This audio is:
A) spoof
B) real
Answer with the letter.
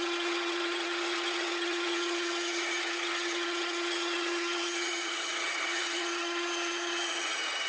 A